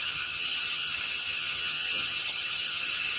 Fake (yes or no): yes